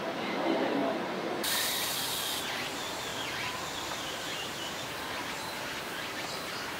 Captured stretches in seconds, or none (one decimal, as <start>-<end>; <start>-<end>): 1.9-2.4; 3.1-3.8